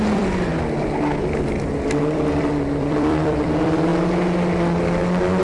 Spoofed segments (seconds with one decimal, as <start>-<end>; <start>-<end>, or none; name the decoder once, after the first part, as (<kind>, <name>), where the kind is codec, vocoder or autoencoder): 0.0-0.5 (vocoder, BigVGAN v2); 1.4-3.9